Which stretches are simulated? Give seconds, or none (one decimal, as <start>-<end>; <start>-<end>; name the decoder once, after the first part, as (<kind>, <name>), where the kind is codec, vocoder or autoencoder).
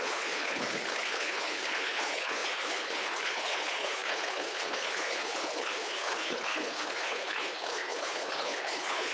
0.0-9.1 (codec, HILCodec)